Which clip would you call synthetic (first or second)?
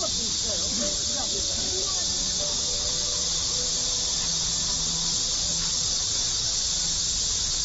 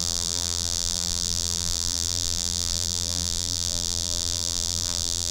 second